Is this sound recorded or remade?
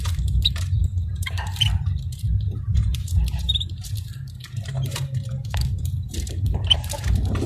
remade